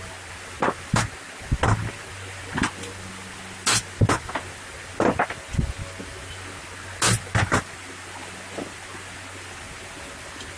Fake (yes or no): no